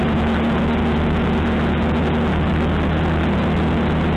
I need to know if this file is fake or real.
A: real